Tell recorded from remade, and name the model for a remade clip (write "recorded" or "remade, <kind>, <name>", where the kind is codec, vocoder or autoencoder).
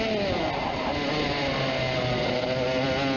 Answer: recorded